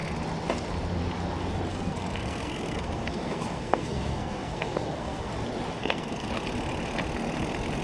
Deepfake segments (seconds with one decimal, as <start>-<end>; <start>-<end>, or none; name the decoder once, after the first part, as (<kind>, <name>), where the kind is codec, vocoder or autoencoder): 1.7-5.3 (codec, SNAC); 5.8-6.3